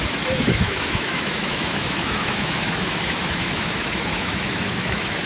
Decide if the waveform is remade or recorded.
remade